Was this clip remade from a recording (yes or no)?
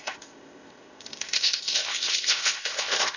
yes